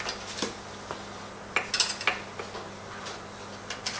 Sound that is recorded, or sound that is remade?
recorded